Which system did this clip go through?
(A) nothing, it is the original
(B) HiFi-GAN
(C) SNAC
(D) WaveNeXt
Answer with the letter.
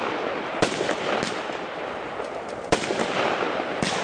A